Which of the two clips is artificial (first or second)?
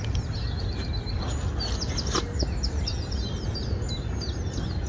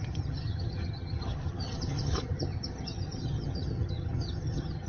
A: second